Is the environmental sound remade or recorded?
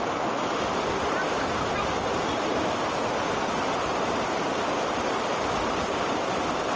recorded